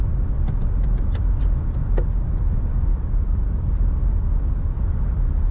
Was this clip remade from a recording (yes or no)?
yes